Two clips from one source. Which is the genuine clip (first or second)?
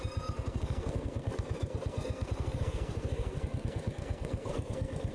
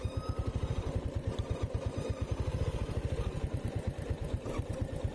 second